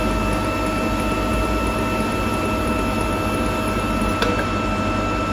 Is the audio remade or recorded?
recorded